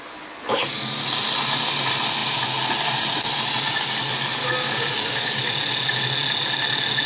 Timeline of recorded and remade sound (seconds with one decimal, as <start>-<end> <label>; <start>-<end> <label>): 0.0-4.4 recorded; 4.4-5.4 remade; 5.4-7.1 recorded